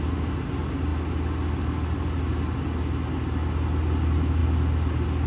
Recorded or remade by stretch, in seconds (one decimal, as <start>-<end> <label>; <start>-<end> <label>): 0.0-5.3 recorded